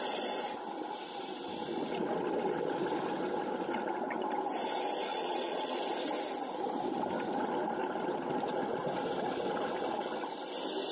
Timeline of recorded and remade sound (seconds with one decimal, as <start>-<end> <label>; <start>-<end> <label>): 0.0-5.1 recorded; 5.1-5.8 remade; 5.8-10.9 recorded